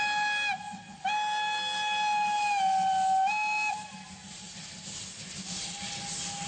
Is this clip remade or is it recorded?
recorded